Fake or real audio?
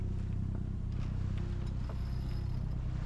real